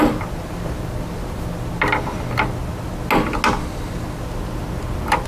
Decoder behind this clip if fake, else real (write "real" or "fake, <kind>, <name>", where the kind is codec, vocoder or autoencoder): real